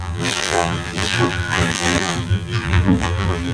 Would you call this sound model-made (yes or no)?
yes